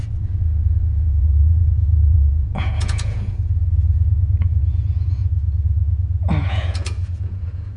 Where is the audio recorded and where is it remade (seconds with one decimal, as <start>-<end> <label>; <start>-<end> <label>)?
0.0-5.2 remade; 5.2-6.4 recorded; 6.4-7.8 remade